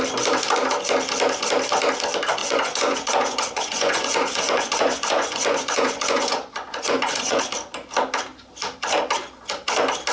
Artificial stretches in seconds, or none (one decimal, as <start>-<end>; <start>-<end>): 2.4-7.4